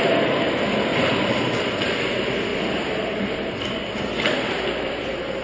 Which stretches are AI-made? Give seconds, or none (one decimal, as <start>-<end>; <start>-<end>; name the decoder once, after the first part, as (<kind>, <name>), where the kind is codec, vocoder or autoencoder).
none